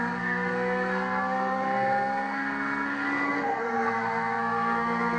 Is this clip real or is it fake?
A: fake